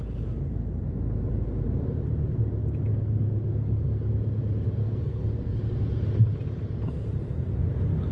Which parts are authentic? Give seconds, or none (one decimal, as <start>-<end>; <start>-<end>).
0.0-2.9; 4.0-4.8; 5.6-8.1

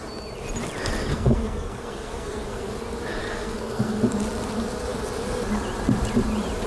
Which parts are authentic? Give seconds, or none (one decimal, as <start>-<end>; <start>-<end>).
0.0-1.1; 2.7-3.2; 4.0-6.7

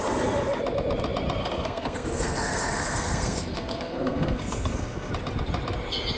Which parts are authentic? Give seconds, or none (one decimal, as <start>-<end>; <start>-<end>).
0.0-1.4; 5.1-6.2

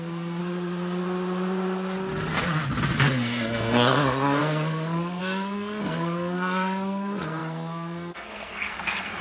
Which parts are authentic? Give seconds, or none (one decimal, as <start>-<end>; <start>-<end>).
0.4-3.0